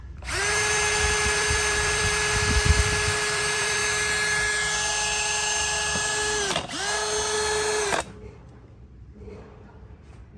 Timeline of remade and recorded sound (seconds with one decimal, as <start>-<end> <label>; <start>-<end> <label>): 0.0-3.8 remade; 3.8-8.0 recorded; 8.0-10.4 remade